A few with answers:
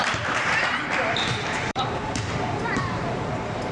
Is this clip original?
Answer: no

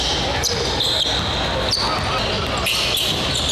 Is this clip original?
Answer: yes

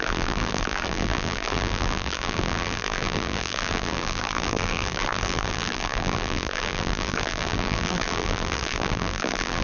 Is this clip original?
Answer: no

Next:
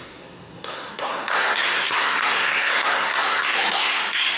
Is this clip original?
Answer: no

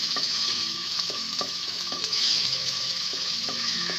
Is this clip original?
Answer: no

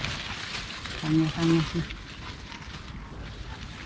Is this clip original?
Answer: yes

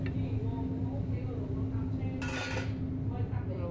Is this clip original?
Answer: yes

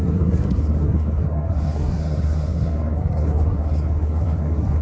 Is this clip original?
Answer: no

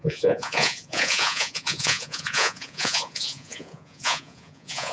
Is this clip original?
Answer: no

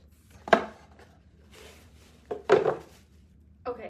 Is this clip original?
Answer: no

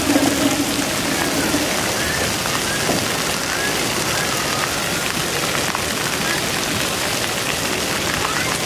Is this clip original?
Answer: yes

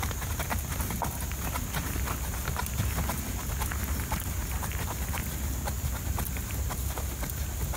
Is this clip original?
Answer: yes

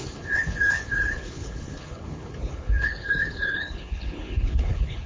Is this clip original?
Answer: no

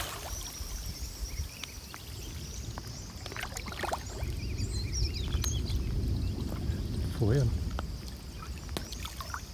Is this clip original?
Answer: yes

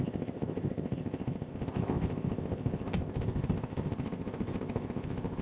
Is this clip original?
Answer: no